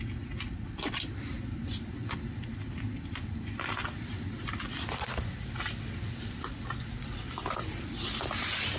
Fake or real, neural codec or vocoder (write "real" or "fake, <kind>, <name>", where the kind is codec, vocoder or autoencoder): real